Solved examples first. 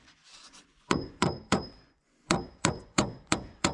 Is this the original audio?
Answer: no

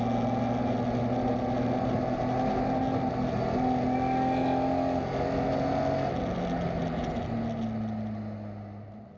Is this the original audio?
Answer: yes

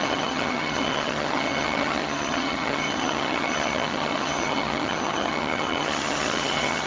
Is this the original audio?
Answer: no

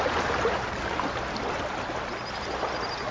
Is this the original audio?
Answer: yes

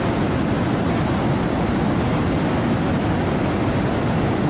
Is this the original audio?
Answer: yes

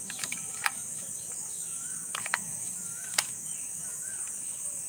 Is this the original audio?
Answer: no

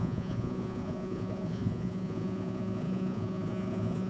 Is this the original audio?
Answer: no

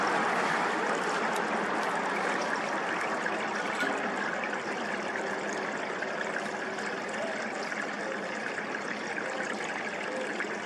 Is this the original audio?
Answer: yes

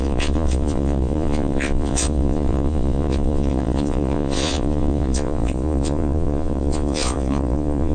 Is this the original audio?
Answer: no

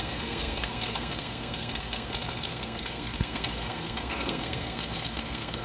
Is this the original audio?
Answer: no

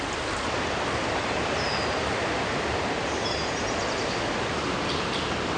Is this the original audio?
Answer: yes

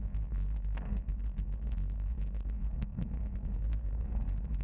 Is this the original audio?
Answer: no